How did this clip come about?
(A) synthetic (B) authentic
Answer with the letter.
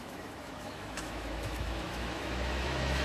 A